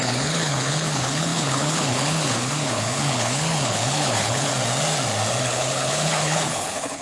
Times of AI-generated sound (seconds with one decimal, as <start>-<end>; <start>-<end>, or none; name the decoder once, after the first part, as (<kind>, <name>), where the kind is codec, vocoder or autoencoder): 0.0-4.5 (codec, HILCodec); 5.4-7.0